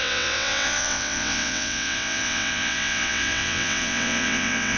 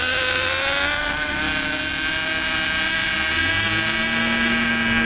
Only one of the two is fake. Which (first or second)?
first